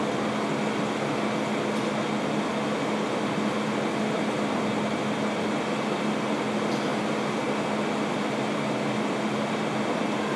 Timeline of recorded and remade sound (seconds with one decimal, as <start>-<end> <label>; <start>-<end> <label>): 0.0-10.4 recorded